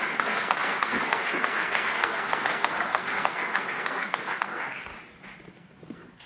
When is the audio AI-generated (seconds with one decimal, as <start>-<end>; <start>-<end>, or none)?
0.0-4.9; 5.5-6.3